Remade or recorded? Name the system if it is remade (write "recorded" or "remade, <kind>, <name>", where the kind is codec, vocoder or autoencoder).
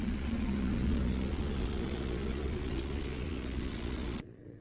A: remade, vocoder, Vocos